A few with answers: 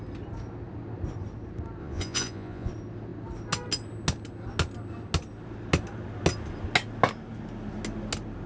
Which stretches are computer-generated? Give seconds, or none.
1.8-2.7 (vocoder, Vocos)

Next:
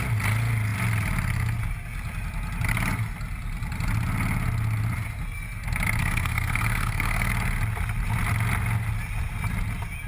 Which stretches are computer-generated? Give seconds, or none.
6.0-7.3 (codec, SNAC)

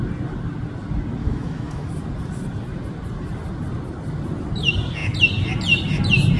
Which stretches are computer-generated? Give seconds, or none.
1.2-1.9 (autoencoder, DAC-VAE)

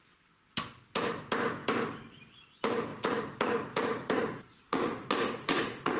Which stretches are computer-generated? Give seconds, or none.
2.9-6.0 (vocoder, Vocos)

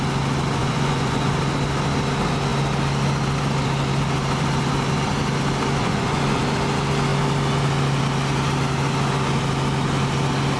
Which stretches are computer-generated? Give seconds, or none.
0.6-1.3 (vocoder, Vocos); 5.8-6.4

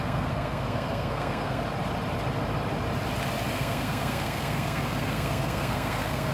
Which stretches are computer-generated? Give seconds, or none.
0.0-1.6 (codec, SNAC); 3.5-6.3

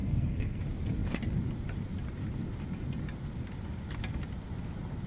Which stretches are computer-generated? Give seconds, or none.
0.0-0.6 (codec, SNAC)